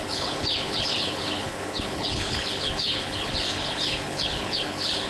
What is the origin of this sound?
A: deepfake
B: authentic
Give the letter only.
A